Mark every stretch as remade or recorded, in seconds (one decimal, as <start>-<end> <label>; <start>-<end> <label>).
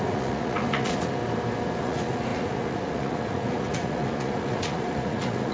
0.0-1.2 remade; 1.2-1.8 recorded; 1.8-5.5 remade